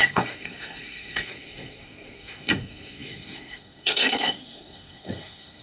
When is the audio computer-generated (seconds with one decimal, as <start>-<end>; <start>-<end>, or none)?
0.0-5.6